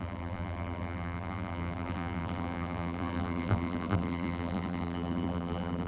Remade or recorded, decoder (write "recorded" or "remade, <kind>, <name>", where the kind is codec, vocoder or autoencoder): remade, vocoder, BigVGAN v2